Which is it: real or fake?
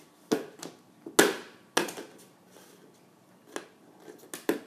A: real